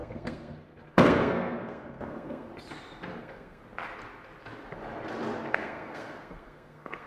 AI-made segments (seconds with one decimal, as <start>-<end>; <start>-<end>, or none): 0.0-2.5; 3.2-3.6; 5.5-7.1